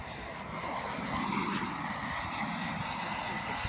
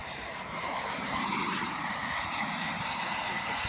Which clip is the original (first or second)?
first